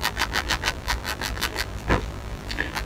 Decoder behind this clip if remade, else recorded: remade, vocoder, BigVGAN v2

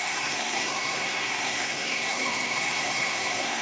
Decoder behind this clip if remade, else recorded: remade, codec, SNAC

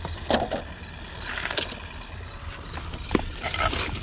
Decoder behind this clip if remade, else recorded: recorded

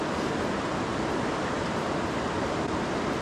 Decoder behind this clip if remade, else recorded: recorded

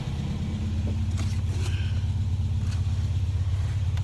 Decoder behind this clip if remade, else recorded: recorded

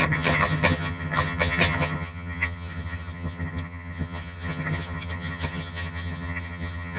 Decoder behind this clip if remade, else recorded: remade, vocoder, HiFi-GAN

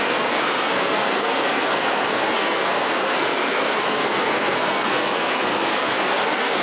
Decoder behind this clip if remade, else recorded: remade, codec, SNAC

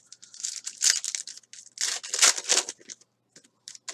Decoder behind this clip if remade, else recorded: recorded